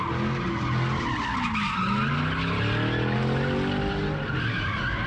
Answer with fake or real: real